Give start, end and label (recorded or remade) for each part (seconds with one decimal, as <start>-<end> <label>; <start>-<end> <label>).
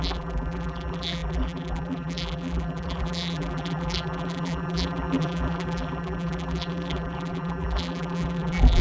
0.0-8.8 remade